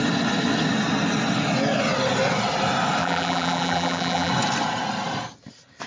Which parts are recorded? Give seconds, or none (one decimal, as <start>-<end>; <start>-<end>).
0.0-3.0; 4.3-5.9